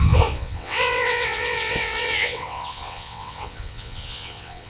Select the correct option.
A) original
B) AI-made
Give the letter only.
B